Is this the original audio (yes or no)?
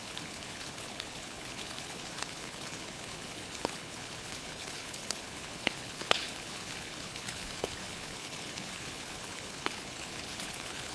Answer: no